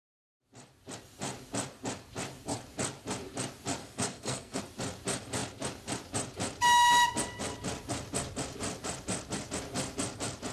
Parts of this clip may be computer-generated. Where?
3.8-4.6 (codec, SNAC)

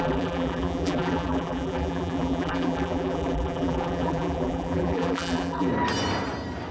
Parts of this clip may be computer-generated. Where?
0.0-5.7 (vocoder, BigVGAN v2)

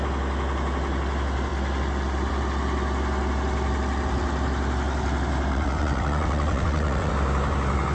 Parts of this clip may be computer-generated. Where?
5.5-7.1 (vocoder, WaveNeXt)

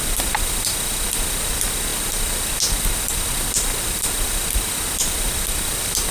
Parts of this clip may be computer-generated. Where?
none

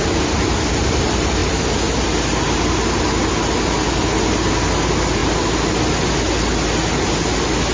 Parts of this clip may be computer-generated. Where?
none